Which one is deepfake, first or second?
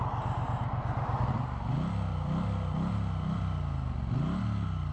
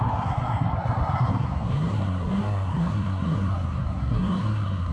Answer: second